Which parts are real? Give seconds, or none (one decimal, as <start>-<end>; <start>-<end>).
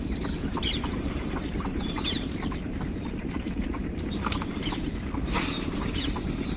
4.6-6.6